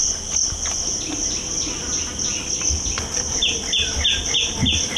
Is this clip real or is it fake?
real